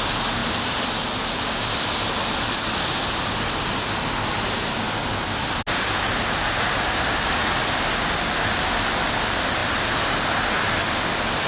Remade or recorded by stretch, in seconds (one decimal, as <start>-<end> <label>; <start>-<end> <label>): 0.0-11.5 recorded